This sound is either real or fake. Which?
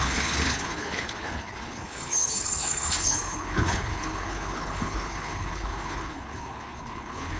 fake